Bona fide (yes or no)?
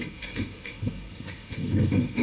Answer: no